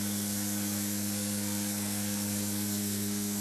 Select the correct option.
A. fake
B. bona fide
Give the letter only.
A